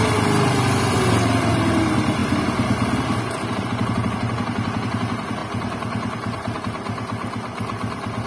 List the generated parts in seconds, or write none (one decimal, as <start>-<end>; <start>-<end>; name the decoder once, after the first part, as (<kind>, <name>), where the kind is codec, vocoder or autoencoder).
none